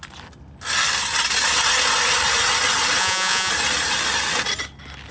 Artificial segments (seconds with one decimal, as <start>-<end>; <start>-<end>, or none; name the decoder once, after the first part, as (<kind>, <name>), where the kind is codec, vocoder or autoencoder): 3.0-3.5 (vocoder, Vocos)